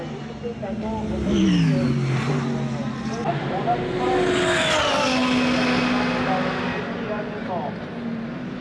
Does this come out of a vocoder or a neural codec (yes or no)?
no